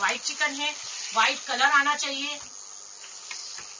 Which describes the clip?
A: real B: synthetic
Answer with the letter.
A